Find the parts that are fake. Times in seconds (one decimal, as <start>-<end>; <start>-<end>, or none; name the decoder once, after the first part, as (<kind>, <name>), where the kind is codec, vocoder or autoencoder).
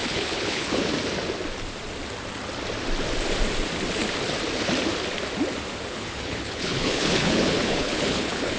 0.0-0.9 (codec, HILCodec); 5.9-8.6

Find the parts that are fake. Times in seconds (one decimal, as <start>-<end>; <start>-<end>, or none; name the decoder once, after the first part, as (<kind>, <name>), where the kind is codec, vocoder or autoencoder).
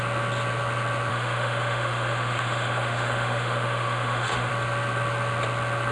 1.1-4.5 (autoencoder, DAC-VAE)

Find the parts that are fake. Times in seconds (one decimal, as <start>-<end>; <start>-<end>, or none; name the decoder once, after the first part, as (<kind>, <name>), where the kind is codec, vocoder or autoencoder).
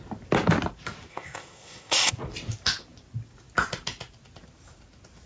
1.1-2.1 (codec, ZipCodec)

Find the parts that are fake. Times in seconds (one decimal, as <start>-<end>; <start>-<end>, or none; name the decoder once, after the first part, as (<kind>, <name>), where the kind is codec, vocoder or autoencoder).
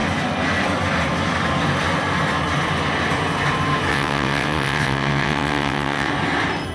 3.9-6.1 (vocoder, WaveNeXt)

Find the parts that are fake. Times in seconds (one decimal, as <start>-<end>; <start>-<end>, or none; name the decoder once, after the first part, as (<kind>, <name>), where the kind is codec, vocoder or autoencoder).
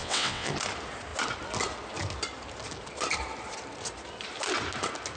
0.0-0.5 (vocoder, WaveNeXt)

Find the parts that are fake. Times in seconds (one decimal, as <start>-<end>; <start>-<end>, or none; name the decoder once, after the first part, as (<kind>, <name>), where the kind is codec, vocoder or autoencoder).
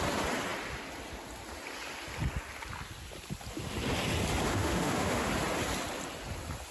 4.5-5.3 (autoencoder, DAC-VAE)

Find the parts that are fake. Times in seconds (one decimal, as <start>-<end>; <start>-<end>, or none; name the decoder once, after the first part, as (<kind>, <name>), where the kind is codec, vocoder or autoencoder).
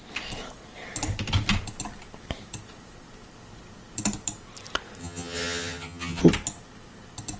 5.0-6.2 (vocoder, HiFi-GAN)